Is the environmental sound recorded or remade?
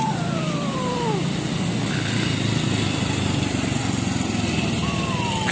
recorded